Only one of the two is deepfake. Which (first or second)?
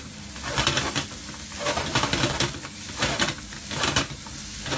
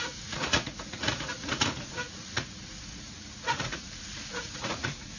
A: second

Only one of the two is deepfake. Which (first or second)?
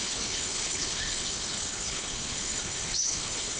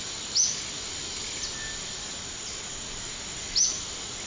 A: first